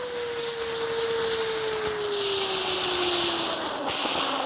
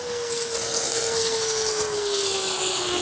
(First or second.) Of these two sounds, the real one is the first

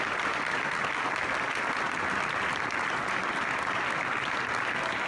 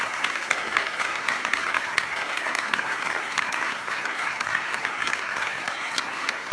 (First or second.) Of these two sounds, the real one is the first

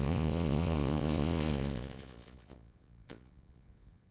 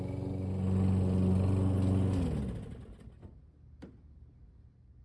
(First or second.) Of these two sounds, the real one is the second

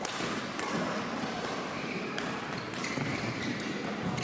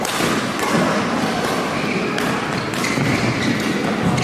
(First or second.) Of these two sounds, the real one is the second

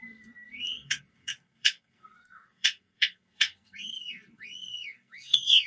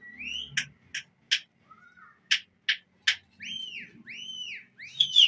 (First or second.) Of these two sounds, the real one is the second